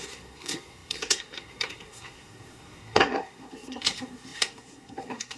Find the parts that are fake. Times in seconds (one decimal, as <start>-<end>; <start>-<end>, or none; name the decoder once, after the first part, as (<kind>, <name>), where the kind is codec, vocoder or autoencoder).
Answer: 0.0-5.4 (codec, SNAC)